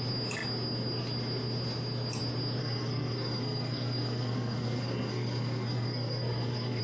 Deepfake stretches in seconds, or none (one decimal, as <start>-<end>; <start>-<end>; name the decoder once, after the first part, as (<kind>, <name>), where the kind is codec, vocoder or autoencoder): 2.6-6.8 (codec, SNAC)